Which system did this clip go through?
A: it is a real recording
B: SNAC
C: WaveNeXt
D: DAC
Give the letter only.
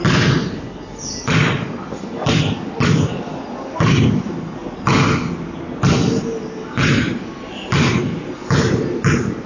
A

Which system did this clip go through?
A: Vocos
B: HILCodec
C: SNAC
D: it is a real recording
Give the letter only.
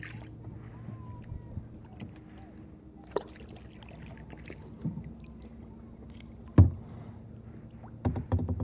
D